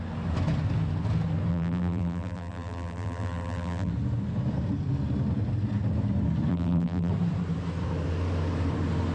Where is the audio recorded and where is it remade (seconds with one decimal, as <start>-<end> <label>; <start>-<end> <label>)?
0.0-1.5 recorded; 1.5-3.9 remade; 3.9-6.5 recorded; 6.5-7.1 remade; 7.1-9.1 recorded